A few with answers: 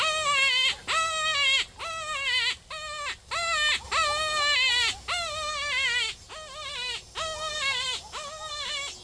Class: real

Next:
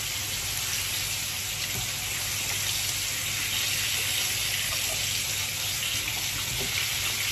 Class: real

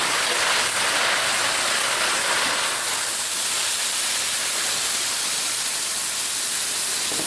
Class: real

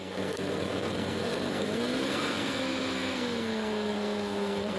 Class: fake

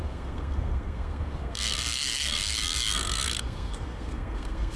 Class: fake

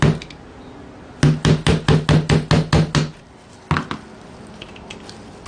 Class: real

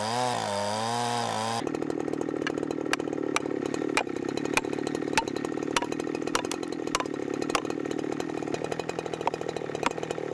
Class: real